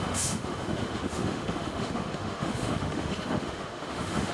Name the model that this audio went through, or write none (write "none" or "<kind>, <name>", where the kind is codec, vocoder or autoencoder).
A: autoencoder, DAC-VAE